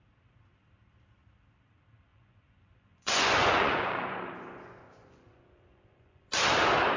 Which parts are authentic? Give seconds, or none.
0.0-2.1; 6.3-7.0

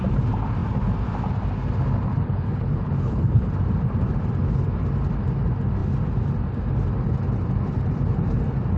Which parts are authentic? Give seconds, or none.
0.0-2.1; 3.5-8.8

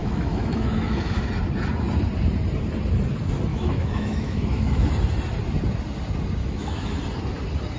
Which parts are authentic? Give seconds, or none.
1.3-3.5; 4.9-6.4; 7.0-7.8

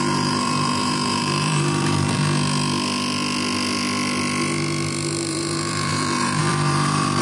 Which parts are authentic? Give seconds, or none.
2.2-5.3

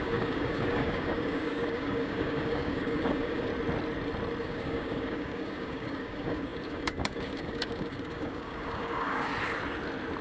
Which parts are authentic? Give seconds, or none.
3.5-4.4; 9.3-10.2

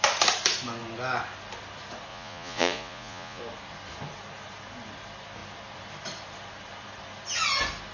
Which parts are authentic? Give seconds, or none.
0.0-2.1; 3.4-7.9